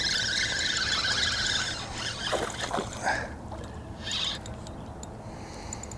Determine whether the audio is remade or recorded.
recorded